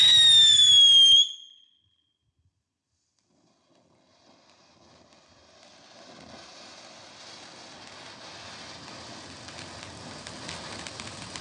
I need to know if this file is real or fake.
real